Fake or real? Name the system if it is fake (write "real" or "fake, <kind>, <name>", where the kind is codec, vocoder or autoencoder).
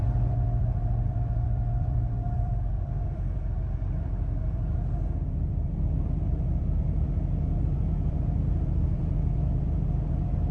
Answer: fake, vocoder, BigVGAN v2